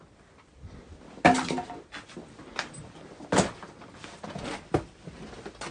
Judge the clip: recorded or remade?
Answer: recorded